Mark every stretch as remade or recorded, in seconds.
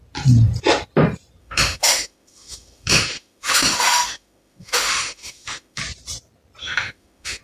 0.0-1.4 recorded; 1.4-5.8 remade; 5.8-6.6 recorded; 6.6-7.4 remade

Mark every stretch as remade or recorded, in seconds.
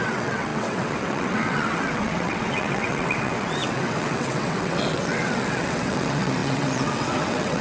0.0-7.6 remade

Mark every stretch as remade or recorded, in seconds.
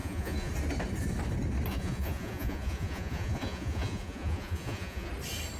0.0-0.5 remade; 0.5-1.7 recorded; 1.7-5.1 remade; 5.1-5.6 recorded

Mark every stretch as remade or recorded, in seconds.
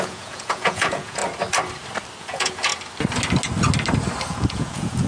0.0-1.2 remade; 1.2-2.2 recorded; 2.2-2.7 remade; 2.7-4.3 recorded; 4.3-5.1 remade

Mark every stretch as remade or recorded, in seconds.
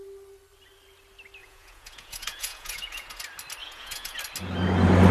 0.0-1.4 recorded; 1.4-3.2 remade; 3.2-3.6 recorded; 3.6-4.2 remade; 4.2-5.1 recorded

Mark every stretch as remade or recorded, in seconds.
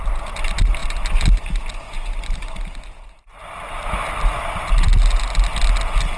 0.0-6.2 recorded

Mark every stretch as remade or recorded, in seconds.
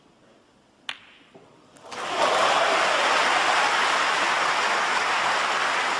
0.0-6.0 recorded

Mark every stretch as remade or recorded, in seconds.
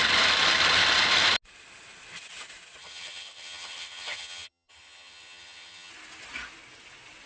0.0-2.8 recorded; 2.8-5.9 remade; 5.9-7.3 recorded